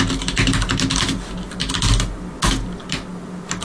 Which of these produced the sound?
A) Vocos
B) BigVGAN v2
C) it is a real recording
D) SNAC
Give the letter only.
C